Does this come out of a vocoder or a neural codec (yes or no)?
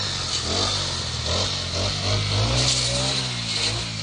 no